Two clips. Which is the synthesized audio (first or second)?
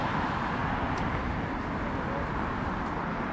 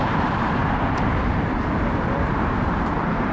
second